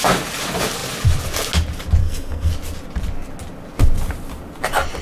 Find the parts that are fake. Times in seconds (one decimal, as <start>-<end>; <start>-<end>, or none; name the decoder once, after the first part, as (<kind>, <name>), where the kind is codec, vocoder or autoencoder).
2.0-2.5 (codec, SNAC)